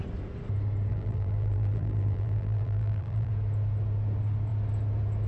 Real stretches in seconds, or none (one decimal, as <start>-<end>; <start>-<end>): 0.0-0.9; 3.3-5.3